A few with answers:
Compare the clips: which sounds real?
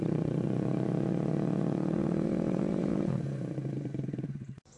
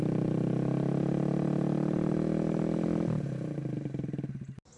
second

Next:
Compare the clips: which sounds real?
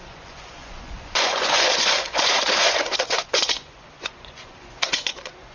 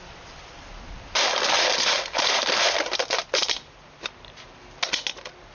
second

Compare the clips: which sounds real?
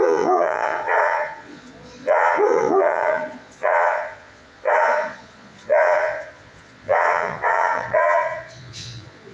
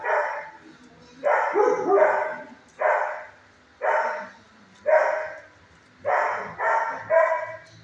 second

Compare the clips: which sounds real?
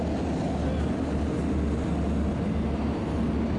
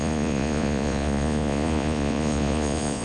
first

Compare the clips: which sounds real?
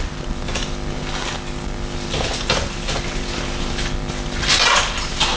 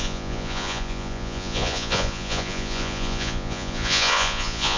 first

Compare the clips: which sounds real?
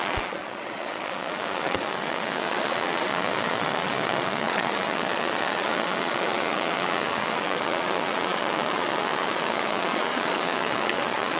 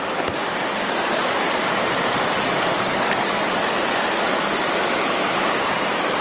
second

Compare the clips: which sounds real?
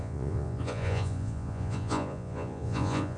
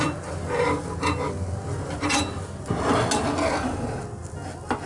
second